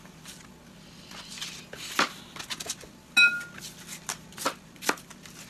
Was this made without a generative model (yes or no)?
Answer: yes